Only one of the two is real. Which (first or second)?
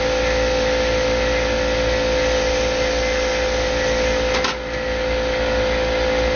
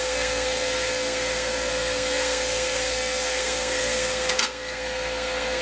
first